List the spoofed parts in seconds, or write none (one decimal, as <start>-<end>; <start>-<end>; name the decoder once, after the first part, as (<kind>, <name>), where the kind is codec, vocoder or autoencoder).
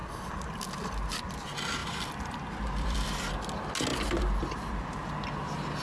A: 1.8-3.3 (vocoder, BigVGAN v2); 3.9-5.1